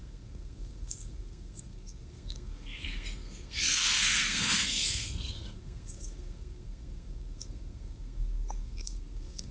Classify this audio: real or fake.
fake